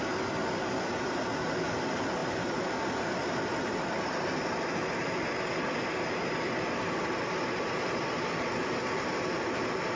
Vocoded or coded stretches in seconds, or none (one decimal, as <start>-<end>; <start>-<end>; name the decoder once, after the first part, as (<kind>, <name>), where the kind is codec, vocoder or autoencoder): none